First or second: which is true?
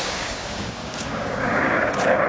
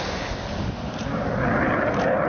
second